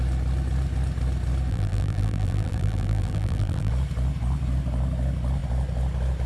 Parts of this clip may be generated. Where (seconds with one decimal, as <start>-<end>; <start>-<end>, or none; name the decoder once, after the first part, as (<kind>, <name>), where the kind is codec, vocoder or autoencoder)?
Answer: 1.5-3.7 (vocoder, BigVGAN v2)